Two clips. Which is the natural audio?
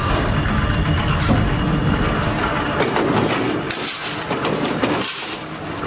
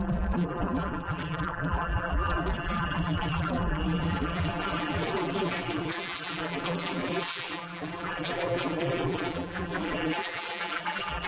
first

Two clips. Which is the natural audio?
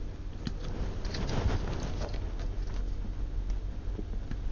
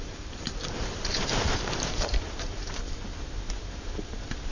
first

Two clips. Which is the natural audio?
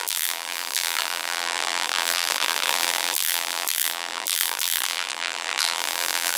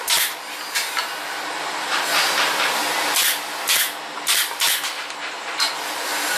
second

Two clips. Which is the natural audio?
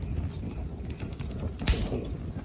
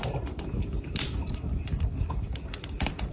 first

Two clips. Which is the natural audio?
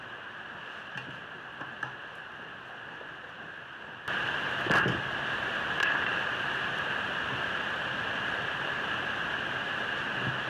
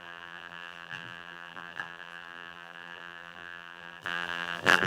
first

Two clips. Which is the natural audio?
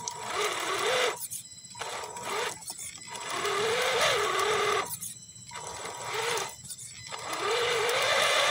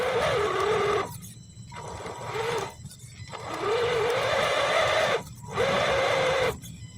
first